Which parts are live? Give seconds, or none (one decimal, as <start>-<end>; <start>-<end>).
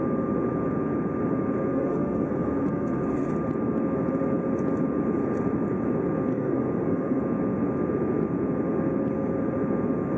0.0-1.7; 3.3-6.3; 7.2-10.2